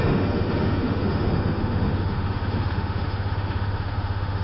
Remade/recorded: remade